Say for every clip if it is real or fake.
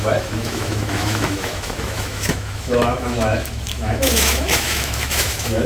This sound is fake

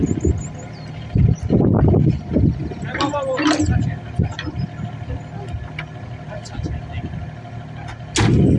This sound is real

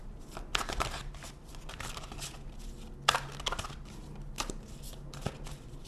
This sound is real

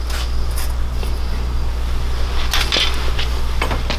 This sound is real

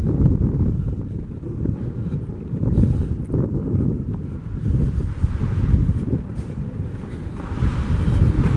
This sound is real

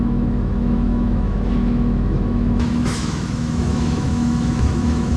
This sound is fake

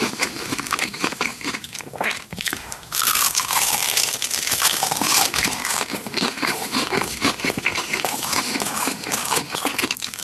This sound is fake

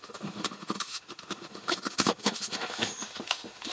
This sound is fake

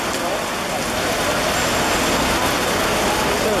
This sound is real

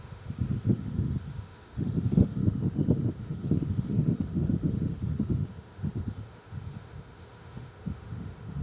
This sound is fake